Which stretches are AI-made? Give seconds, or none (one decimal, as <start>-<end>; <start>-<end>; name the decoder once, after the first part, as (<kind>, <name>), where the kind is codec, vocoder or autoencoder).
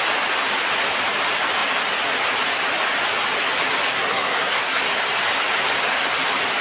3.9-4.8 (codec, SNAC)